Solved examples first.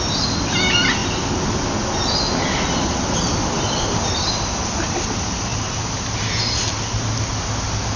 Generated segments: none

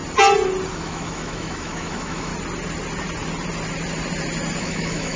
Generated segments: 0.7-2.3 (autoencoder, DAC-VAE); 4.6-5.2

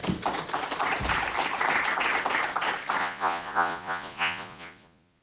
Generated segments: 3.0-5.2 (vocoder, Vocos)

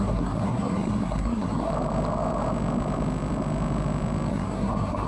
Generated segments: 0.0-1.7 (codec, SNAC); 4.3-5.1